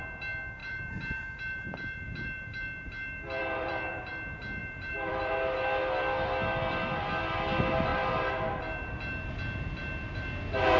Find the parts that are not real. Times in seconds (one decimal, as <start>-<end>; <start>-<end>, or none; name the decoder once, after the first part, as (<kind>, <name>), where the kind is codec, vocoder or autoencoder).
0.6-4.1 (vocoder, BigVGAN v2); 4.6-5.3